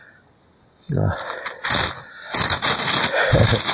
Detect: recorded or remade recorded